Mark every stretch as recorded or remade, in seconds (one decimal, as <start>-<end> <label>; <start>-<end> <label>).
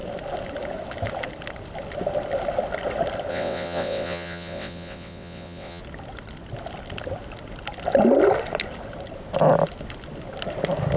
0.0-3.3 recorded; 3.3-5.8 remade; 5.8-11.0 recorded